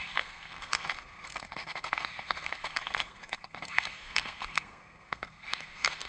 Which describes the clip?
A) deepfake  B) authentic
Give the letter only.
A